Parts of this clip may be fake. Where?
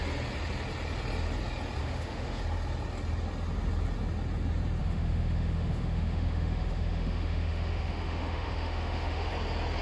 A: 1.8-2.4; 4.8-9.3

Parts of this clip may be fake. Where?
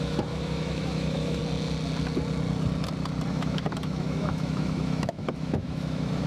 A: 0.0-1.4; 3.3-6.3